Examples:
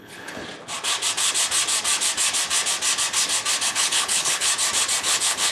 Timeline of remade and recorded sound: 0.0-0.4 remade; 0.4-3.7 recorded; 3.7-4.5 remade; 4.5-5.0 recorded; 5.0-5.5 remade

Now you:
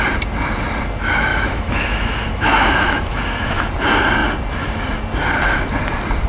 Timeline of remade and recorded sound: 0.0-1.3 recorded; 1.3-3.7 remade; 3.7-6.3 recorded

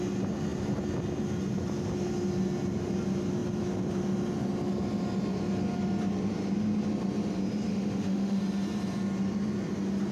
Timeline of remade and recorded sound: 0.0-7.7 recorded; 7.7-8.4 remade; 8.4-10.1 recorded

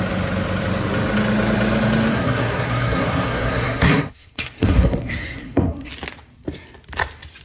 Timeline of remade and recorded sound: 0.0-2.1 recorded; 2.1-5.9 remade; 5.9-7.4 recorded

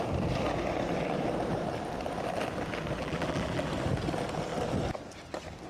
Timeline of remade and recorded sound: 0.0-3.0 recorded; 3.0-3.7 remade; 3.7-5.7 recorded